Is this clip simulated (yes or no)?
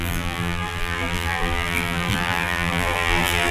yes